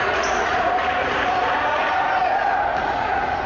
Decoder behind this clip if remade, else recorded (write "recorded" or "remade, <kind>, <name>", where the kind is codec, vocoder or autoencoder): remade, vocoder, Vocos